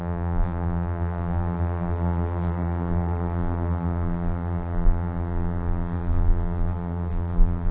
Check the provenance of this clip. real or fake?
fake